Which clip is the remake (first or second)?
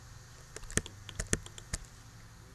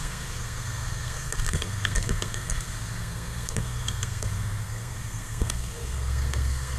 second